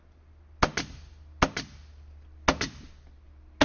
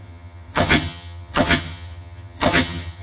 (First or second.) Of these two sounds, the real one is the first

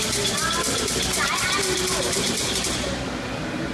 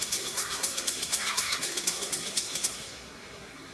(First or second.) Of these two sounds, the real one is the first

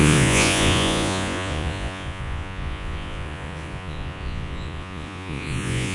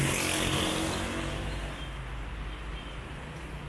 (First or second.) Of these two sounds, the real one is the second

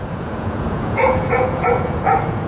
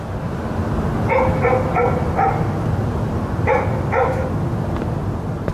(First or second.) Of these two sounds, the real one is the second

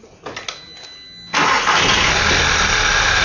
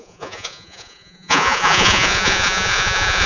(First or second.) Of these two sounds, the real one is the first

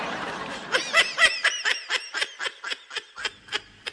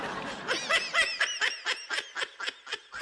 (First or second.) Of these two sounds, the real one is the second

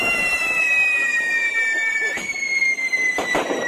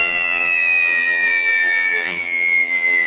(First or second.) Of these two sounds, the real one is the first